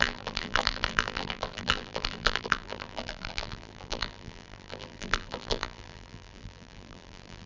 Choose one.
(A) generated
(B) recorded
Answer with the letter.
A